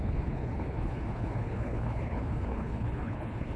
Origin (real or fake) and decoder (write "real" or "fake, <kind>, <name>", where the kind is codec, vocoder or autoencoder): fake, codec, HILCodec